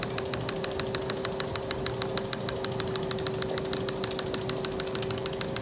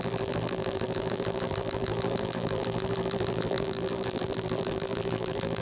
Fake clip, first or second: second